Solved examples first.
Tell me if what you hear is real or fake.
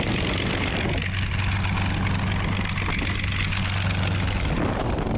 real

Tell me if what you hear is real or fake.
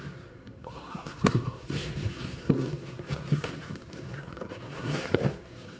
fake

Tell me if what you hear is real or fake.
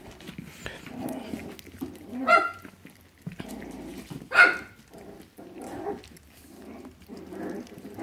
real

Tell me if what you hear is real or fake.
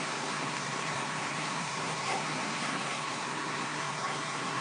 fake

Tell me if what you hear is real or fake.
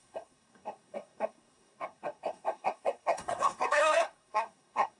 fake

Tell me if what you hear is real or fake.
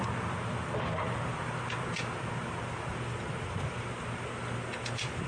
real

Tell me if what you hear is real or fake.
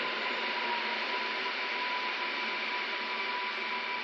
real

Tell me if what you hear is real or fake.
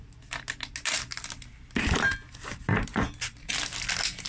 real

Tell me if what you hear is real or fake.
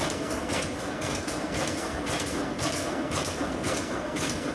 fake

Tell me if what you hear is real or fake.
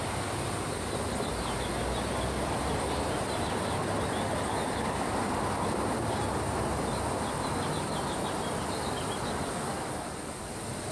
real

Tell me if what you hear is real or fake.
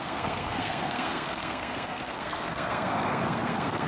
fake